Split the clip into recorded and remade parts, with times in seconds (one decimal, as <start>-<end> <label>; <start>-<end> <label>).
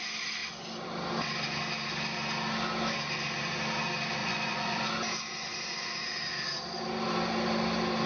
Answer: 0.0-4.2 recorded; 4.2-4.9 remade; 4.9-8.1 recorded